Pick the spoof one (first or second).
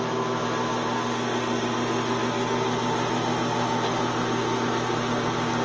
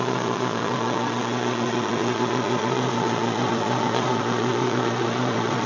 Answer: second